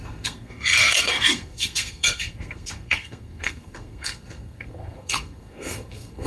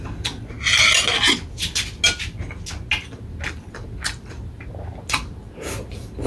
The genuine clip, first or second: second